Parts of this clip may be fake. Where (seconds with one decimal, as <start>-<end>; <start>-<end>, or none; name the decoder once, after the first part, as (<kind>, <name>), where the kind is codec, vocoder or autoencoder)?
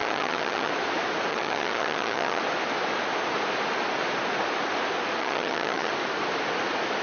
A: 0.0-0.7 (vocoder, HiFi-GAN); 1.3-2.4; 5.2-5.9